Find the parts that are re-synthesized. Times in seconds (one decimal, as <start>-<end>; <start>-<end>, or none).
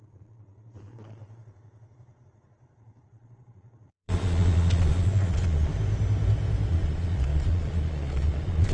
0.0-5.7; 6.7-8.7